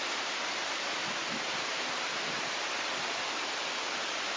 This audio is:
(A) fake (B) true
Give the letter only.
B